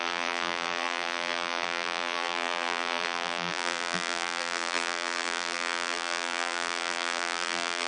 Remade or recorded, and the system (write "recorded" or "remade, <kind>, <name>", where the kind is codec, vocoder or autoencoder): remade, vocoder, BigVGAN v2